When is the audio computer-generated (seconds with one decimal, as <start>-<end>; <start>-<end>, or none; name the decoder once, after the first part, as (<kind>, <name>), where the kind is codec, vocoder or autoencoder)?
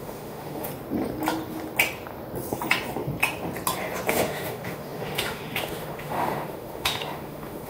0.0-0.7 (autoencoder, DAC-VAE); 4.1-7.7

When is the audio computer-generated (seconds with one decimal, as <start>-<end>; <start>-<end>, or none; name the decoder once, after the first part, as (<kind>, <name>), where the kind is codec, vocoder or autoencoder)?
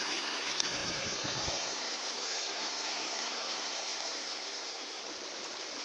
0.0-5.0 (codec, SNAC)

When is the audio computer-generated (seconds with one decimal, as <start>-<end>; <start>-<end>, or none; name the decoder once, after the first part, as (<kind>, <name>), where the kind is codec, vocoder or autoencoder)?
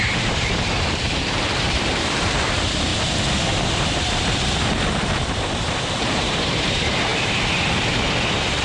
0.0-2.9 (vocoder, BigVGAN v2); 5.3-7.1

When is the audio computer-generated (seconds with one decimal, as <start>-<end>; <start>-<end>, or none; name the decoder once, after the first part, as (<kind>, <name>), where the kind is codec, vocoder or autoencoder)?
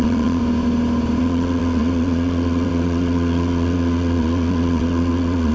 0.0-0.4 (vocoder, Vocos); 1.2-5.5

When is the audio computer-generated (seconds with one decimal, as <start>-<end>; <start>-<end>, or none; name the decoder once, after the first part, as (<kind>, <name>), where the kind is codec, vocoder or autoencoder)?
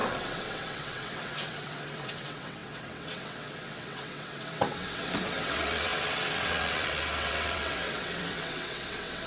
0.0-9.3 (vocoder, WaveNeXt)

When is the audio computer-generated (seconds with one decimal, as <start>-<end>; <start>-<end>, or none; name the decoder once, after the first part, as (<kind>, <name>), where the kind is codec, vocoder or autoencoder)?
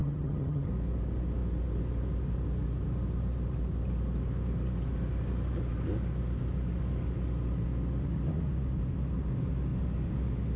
0.0-0.7 (vocoder, HiFi-GAN)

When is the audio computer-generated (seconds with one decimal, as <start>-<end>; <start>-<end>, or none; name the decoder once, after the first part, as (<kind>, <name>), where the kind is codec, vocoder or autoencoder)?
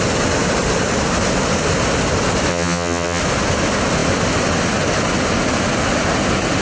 2.5-3.2 (vocoder, HiFi-GAN)